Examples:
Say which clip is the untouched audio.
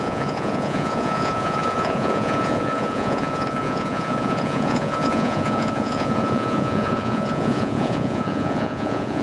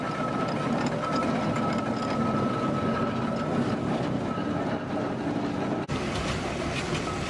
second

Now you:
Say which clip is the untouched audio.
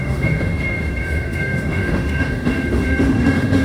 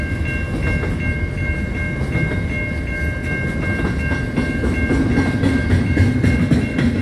second